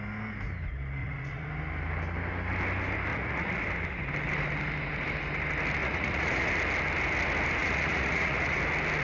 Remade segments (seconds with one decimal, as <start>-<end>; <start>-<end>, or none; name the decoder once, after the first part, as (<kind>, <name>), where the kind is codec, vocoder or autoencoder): 1.0-1.5 (vocoder, Vocos); 3.1-3.6; 5.8-6.5; 7.6-8.6